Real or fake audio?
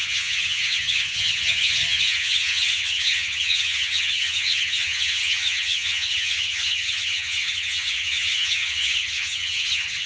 fake